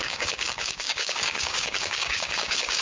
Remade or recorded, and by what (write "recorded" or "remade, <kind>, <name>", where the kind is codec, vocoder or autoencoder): remade, codec, DAC